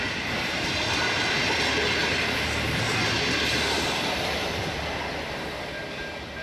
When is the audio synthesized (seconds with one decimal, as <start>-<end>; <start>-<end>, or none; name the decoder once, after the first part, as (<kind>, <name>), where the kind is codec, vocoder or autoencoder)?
none